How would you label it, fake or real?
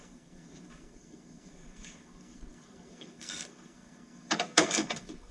fake